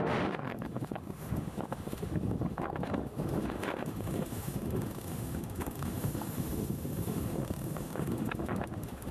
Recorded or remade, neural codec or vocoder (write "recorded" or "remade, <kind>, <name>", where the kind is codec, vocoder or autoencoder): remade, autoencoder, DAC-VAE